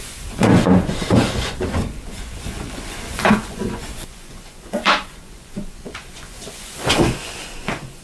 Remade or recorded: remade